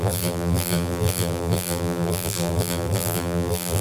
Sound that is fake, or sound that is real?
fake